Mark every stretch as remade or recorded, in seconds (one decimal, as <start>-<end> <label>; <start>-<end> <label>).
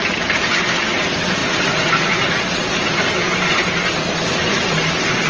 0.0-5.3 recorded